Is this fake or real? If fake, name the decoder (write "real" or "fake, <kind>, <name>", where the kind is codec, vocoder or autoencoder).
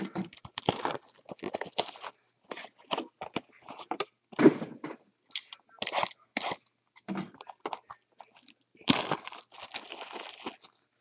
real